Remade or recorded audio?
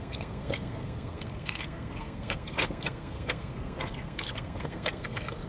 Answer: remade